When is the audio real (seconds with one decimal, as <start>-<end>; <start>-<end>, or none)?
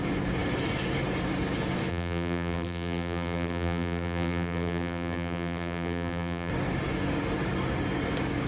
0.0-1.9; 6.5-8.5